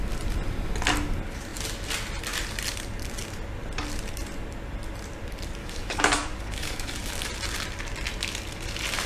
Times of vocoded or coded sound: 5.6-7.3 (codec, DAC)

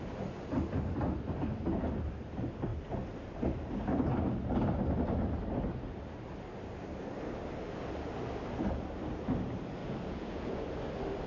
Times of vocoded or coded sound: 9.8-10.6 (vocoder, Vocos)